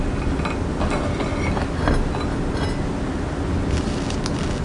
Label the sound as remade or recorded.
recorded